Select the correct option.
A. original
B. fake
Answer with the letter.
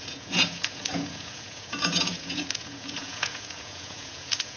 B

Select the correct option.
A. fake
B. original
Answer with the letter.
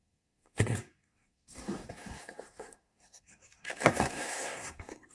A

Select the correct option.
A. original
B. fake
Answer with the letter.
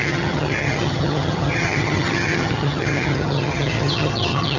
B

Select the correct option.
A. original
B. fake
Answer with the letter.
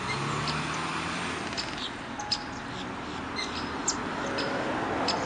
A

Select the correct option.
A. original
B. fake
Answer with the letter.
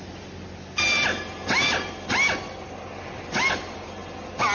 A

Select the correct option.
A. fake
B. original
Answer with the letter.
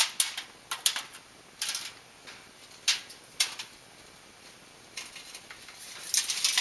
B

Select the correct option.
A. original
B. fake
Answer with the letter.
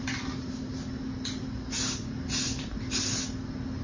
A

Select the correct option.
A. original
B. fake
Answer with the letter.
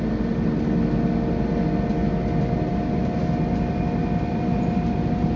A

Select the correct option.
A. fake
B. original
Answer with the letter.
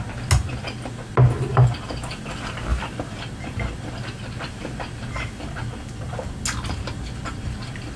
B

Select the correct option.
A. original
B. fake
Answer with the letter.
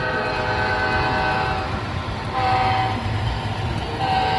A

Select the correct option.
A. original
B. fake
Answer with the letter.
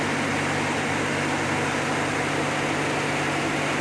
A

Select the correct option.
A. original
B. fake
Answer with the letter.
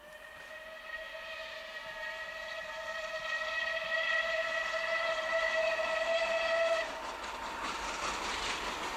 A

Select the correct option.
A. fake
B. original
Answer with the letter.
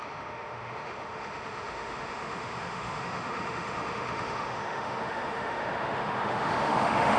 A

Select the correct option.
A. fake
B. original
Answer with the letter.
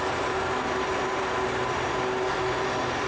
B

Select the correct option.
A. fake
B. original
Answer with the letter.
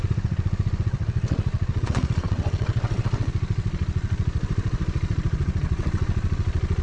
A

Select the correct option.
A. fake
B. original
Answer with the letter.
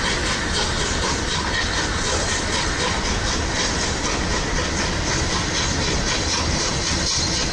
B